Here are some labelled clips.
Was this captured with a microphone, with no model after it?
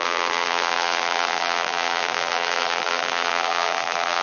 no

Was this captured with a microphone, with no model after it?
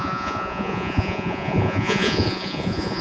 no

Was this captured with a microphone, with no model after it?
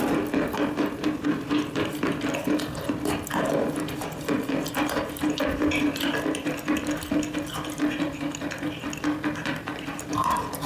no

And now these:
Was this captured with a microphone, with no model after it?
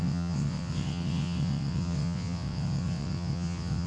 no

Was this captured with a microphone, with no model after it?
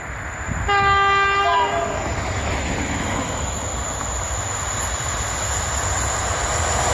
yes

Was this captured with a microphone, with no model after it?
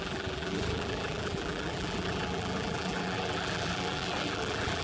no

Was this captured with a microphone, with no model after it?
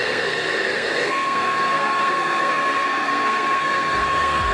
no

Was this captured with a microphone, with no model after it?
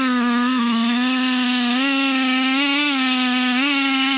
no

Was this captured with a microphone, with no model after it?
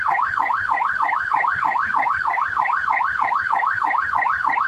no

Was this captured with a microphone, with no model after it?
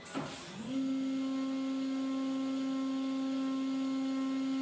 yes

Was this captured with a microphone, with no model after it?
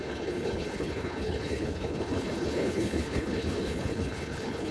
no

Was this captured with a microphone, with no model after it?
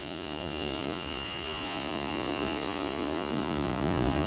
no